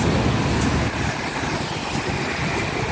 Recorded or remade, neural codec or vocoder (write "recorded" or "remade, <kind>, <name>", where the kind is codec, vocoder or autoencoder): recorded